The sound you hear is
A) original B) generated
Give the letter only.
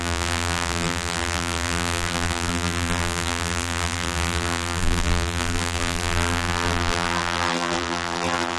B